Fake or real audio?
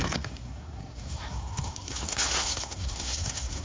fake